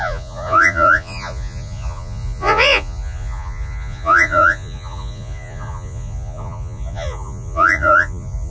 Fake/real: fake